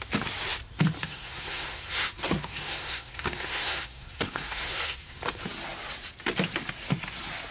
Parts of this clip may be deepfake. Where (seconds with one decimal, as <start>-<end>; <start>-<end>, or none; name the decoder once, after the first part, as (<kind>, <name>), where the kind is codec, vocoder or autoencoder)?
1.0-5.2 (codec, SNAC)